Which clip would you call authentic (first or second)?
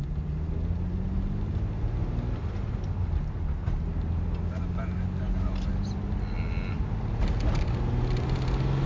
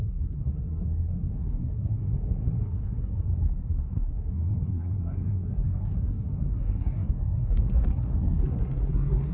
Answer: first